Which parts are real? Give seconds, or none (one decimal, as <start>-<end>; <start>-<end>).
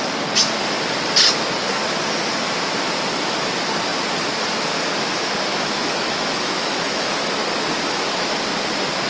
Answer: 0.0-5.5; 7.3-9.1